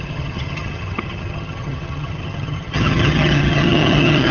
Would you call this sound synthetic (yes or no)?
yes